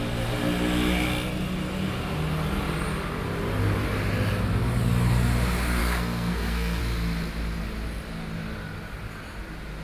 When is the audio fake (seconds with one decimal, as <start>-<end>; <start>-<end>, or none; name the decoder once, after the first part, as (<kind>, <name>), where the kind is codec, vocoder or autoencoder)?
5.8-6.8 (codec, SNAC)